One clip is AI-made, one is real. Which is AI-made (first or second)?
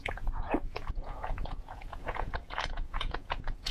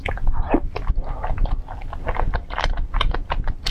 first